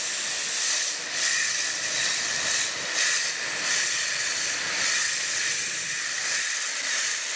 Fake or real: real